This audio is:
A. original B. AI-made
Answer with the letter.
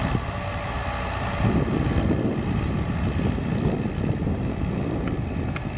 A